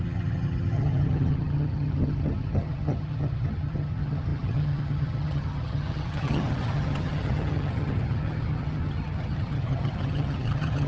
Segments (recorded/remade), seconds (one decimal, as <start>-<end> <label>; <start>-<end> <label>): 0.0-10.9 remade